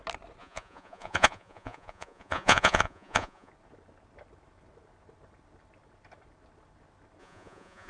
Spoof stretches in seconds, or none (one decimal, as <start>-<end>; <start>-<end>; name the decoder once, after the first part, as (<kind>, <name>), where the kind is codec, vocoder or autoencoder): 0.4-3.5 (vocoder, Vocos); 7.2-7.9